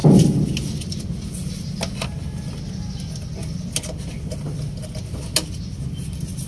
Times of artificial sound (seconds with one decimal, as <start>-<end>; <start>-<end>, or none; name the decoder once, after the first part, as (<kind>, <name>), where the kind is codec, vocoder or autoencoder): none